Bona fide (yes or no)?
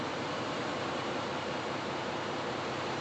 no